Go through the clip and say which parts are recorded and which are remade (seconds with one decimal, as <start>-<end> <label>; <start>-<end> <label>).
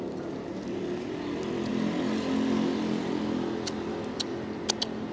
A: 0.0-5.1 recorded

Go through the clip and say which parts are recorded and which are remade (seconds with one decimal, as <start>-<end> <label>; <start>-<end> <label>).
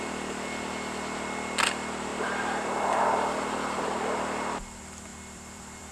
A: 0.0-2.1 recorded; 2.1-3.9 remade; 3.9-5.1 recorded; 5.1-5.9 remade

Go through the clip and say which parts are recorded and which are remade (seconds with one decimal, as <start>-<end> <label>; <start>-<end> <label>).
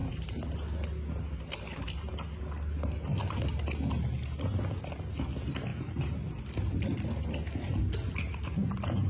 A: 0.0-0.5 remade; 0.5-5.7 recorded; 5.7-6.4 remade; 6.4-9.1 recorded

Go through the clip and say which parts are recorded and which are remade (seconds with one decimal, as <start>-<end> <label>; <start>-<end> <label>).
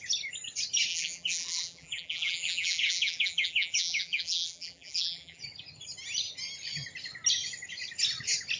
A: 0.0-0.9 recorded; 0.9-5.4 remade; 5.4-8.6 recorded